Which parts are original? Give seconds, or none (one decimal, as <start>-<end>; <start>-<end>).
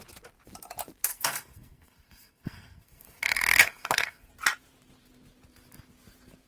0.0-1.1; 4.3-6.5